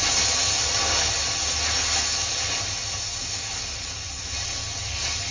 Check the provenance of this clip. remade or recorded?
recorded